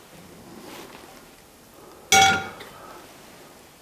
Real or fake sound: real